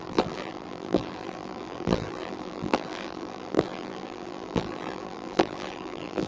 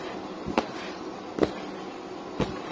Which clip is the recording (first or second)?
second